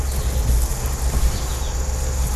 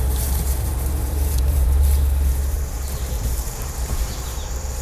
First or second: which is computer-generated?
second